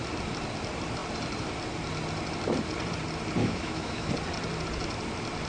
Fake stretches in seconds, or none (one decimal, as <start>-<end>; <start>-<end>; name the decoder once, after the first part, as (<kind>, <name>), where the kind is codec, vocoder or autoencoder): 3.4-4.1 (autoencoder, DAC-VAE)